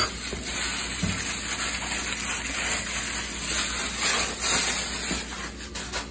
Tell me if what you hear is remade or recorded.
recorded